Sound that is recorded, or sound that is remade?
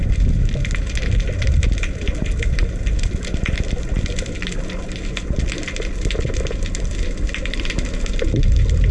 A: recorded